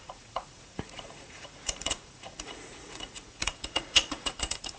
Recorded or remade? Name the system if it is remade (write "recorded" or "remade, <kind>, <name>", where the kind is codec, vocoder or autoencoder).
remade, vocoder, Vocos